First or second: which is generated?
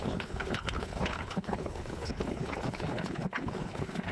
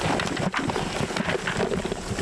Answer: first